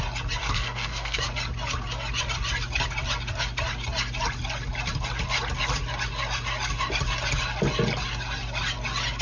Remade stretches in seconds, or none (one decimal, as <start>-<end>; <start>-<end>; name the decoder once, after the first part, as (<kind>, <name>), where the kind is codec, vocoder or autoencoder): 0.4-1.2 (codec, SNAC)